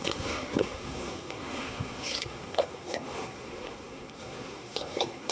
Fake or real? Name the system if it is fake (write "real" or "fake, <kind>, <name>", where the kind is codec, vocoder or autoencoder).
fake, codec, SNAC